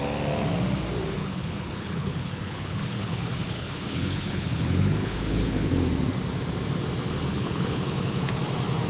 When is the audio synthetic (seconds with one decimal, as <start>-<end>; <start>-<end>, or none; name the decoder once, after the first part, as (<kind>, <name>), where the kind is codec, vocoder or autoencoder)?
1.2-5.7 (codec, HILCodec); 7.3-8.4